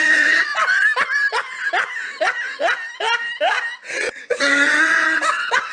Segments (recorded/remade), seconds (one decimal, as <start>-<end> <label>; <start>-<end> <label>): 0.0-0.5 remade; 0.5-3.9 recorded; 3.9-5.7 remade